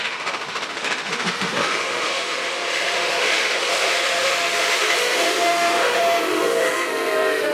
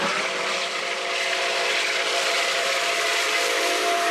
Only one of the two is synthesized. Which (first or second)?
first